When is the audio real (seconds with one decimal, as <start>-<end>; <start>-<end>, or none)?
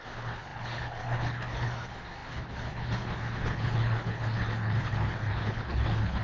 none